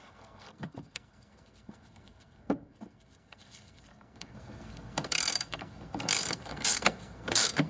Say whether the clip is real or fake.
fake